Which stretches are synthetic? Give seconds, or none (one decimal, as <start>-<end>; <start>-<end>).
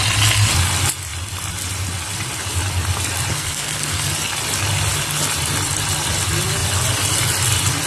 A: 3.3-4.1